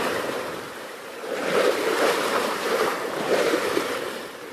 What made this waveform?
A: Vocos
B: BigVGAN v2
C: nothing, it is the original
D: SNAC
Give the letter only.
B